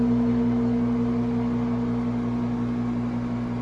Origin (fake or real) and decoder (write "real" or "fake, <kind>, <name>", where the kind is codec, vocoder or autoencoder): real